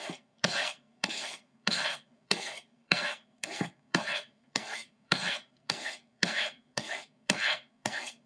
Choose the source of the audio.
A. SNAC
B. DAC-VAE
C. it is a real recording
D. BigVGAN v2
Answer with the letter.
A